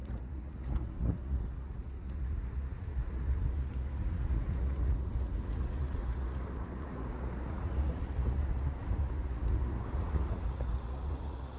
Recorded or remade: remade